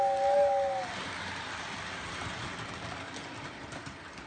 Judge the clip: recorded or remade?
recorded